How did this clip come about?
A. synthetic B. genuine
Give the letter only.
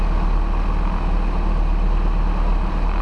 B